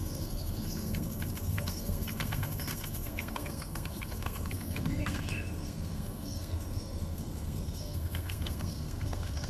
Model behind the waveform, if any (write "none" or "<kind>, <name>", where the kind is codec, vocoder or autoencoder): codec, SNAC